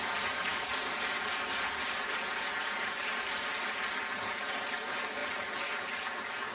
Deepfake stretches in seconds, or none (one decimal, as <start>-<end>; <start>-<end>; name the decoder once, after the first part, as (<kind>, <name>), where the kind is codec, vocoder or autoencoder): none